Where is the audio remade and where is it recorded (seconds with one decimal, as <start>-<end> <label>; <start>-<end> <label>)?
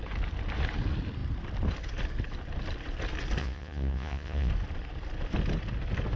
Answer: 0.0-3.4 recorded; 3.4-4.5 remade; 4.5-6.2 recorded